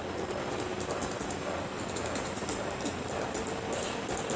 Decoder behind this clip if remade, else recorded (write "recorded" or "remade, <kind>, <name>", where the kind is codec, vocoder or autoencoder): recorded